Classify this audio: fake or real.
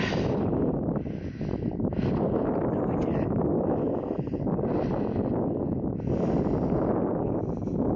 real